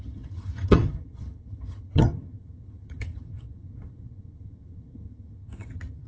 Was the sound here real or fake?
fake